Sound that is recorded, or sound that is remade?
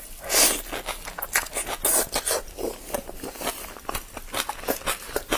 recorded